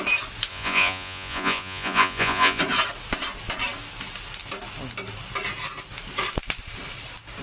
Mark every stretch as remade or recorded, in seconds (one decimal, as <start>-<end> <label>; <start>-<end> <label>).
0.0-0.5 recorded; 0.5-2.6 remade; 2.6-7.4 recorded